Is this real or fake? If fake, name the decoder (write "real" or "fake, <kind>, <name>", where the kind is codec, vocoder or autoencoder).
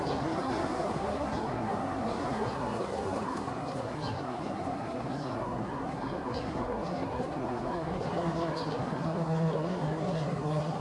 fake, codec, SNAC